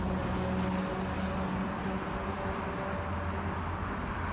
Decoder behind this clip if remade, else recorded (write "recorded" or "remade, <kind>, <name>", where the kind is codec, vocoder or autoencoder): recorded